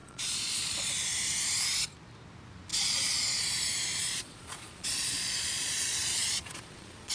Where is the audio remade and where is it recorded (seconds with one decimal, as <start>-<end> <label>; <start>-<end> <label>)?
0.0-0.9 remade; 0.9-2.7 recorded; 2.7-3.4 remade; 3.4-4.0 recorded; 4.0-7.1 remade